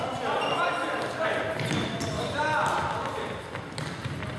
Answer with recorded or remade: recorded